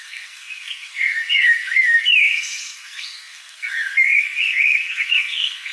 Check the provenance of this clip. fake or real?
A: fake